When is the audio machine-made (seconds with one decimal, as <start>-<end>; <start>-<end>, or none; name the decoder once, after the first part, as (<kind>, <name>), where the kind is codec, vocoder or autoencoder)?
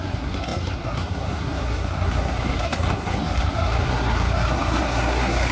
0.0-5.5 (codec, SNAC)